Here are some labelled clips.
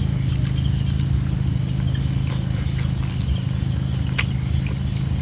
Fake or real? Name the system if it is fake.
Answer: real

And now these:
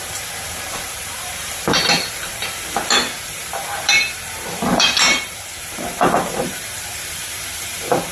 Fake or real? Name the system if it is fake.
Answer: fake, vocoder, BigVGAN v2